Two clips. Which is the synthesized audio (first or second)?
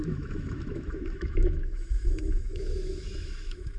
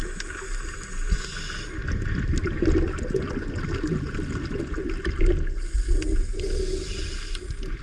first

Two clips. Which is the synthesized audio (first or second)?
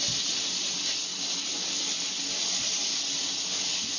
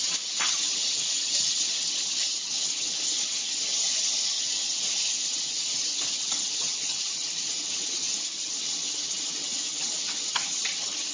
second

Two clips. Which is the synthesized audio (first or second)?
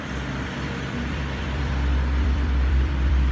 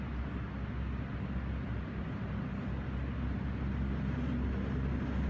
first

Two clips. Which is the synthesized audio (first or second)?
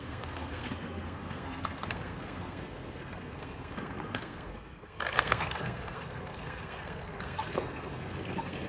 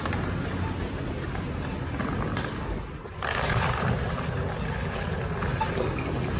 first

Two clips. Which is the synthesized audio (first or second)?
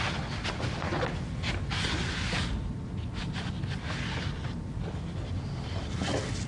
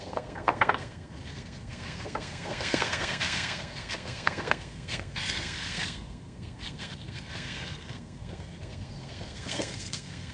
second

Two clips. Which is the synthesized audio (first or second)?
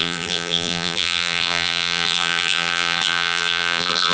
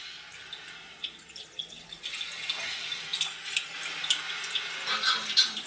first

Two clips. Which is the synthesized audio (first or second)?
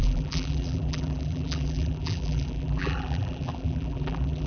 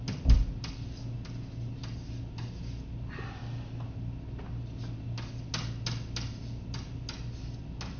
first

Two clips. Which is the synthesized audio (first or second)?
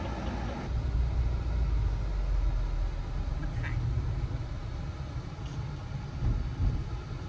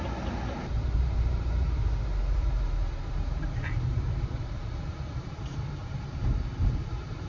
second